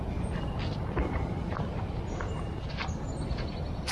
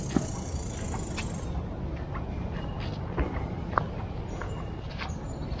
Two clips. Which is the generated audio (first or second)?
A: first